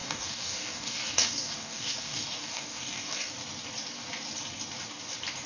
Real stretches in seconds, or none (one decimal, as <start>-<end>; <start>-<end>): 3.3-5.5